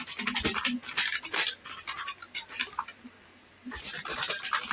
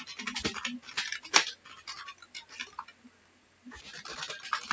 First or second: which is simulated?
first